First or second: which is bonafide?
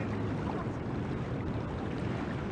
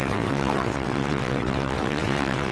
first